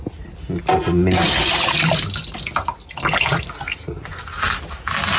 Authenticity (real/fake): real